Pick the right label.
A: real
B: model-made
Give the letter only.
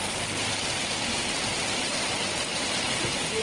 A